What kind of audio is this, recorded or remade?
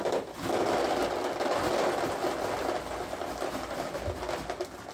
recorded